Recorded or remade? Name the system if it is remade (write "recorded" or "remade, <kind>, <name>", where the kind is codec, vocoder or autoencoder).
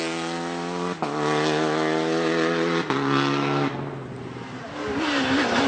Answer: recorded